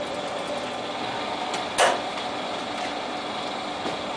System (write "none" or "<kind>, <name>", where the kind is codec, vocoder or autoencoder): none